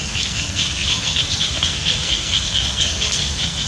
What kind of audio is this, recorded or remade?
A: remade